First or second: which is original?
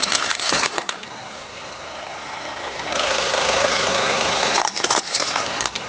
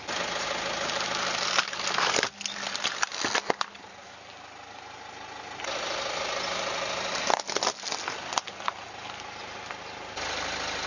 second